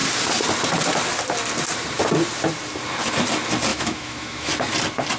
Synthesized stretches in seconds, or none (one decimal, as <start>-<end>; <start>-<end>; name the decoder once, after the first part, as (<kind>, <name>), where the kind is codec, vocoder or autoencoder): 3.7-4.5 (autoencoder, DAC-VAE)